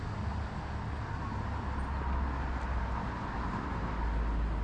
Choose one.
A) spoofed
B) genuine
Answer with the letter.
B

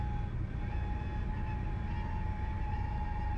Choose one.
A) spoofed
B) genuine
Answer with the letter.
B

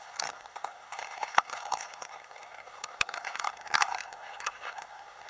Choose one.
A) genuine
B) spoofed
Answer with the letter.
B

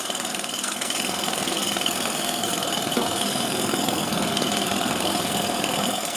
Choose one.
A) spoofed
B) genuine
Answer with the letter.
A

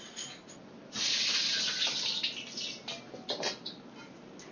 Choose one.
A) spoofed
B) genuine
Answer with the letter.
B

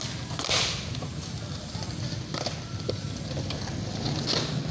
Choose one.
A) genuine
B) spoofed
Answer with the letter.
A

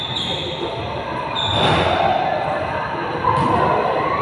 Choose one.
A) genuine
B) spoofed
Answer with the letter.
A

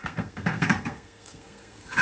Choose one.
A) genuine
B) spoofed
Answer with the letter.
B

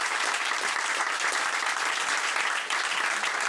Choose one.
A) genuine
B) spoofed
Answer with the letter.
A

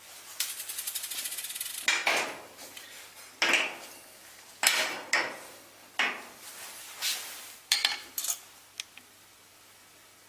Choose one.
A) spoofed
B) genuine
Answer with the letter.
B